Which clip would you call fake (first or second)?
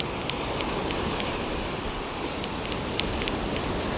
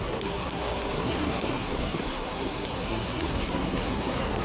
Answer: second